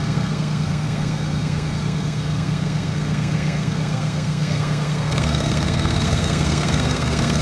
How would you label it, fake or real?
fake